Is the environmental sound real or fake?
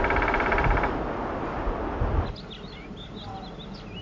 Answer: real